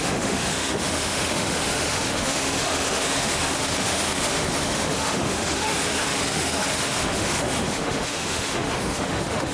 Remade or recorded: remade